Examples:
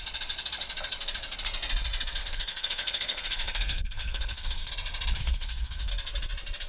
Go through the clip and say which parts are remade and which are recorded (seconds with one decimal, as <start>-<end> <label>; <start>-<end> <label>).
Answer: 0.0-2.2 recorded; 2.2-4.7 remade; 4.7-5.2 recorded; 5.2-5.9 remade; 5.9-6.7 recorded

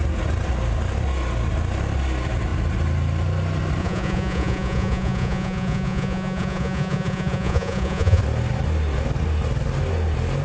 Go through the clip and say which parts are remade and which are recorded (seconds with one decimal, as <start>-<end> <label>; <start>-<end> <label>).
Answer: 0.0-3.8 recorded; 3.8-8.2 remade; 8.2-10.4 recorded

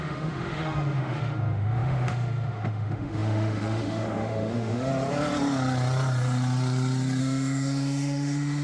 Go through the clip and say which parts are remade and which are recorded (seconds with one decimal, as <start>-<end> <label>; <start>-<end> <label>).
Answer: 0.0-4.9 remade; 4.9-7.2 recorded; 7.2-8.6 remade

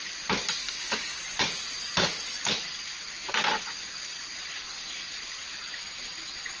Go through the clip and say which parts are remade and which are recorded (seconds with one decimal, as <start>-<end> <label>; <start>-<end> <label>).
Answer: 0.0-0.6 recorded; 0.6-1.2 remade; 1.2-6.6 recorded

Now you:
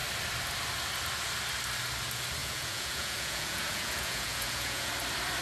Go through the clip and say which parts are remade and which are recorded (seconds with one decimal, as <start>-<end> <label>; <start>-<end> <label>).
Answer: 0.0-2.4 recorded; 2.4-4.9 remade; 4.9-5.4 recorded

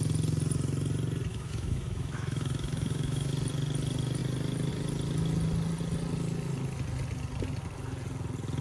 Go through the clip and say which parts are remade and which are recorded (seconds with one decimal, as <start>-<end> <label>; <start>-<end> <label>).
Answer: 0.0-1.3 recorded; 1.3-3.3 remade; 3.3-8.6 recorded